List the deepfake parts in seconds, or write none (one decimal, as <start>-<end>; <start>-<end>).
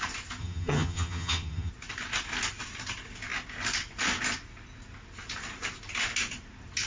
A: 0.4-1.7